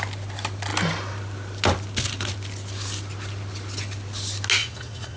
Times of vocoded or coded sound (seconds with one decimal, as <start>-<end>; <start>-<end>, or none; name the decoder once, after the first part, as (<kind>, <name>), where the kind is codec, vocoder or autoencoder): 4.6-5.2 (vocoder, Vocos)